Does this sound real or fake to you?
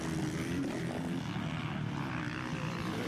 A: real